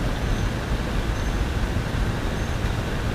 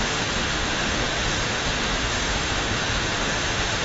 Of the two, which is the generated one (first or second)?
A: second